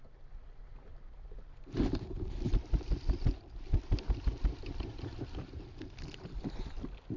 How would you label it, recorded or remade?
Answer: recorded